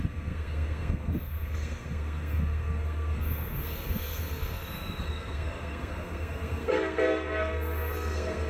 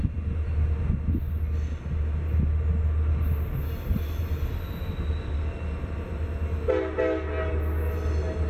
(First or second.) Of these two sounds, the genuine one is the second